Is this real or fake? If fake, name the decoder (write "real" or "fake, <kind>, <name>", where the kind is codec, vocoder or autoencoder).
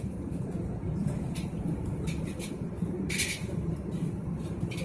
real